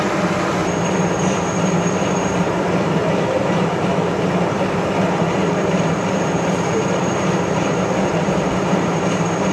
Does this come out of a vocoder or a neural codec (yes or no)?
yes